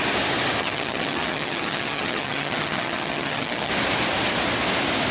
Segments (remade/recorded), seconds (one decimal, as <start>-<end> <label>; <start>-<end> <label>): 0.0-0.6 recorded; 0.6-3.7 remade; 3.7-5.1 recorded